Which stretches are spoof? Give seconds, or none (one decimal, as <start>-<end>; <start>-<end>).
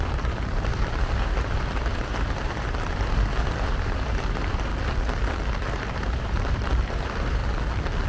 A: 0.0-4.7; 5.7-7.4